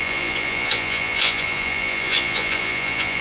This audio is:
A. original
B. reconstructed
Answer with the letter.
B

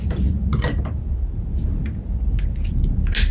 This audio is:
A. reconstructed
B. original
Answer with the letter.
B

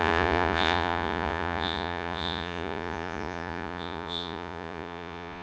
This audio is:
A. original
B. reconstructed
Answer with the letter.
B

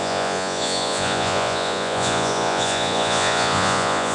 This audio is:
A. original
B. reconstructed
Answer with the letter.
B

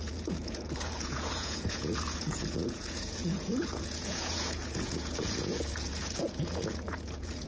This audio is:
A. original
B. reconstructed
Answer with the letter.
B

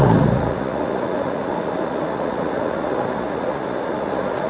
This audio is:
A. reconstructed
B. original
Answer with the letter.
A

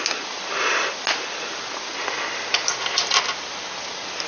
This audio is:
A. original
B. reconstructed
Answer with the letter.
A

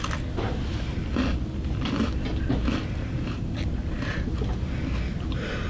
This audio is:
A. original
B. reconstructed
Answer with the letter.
A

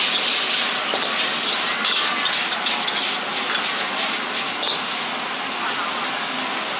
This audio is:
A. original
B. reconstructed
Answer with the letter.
A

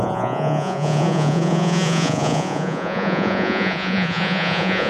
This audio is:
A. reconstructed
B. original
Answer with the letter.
A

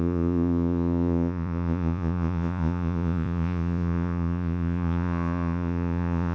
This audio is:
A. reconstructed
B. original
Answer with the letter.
A